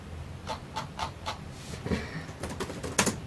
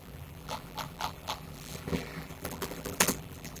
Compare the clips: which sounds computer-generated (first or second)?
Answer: second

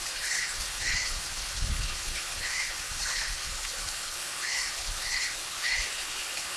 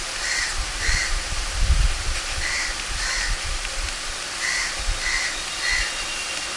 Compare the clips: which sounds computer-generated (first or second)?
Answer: first